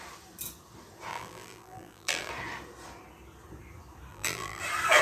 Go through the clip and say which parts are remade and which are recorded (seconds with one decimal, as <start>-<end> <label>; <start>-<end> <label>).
0.0-1.1 recorded; 1.1-2.3 remade; 2.3-4.1 recorded; 4.1-4.6 remade; 4.6-5.0 recorded